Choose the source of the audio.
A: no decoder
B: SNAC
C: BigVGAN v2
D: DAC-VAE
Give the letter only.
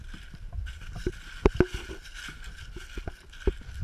A